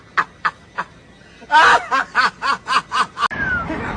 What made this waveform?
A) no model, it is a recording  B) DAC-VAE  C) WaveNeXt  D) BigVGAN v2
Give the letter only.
A